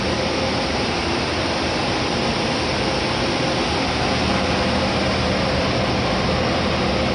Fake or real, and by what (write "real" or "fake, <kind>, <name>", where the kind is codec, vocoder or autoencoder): real